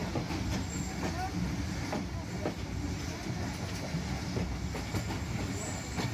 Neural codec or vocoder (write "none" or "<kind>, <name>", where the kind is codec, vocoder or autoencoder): none